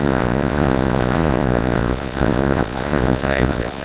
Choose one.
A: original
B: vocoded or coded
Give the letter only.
B